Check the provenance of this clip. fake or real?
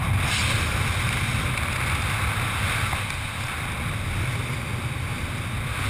real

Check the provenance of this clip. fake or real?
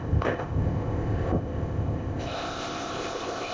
fake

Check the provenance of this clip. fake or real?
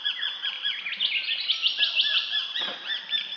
real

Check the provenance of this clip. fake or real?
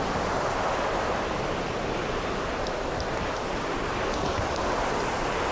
real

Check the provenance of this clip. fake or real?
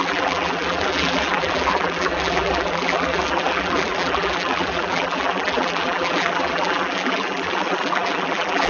fake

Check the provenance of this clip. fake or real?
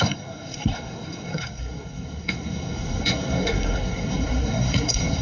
fake